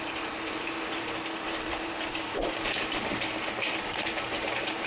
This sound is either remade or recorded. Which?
remade